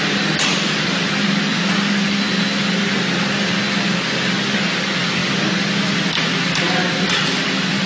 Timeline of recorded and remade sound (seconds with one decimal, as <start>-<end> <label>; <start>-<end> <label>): 0.0-7.9 recorded